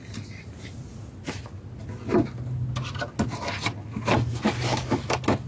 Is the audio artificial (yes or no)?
no